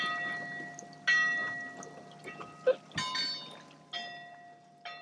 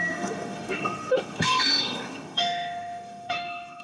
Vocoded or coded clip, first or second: second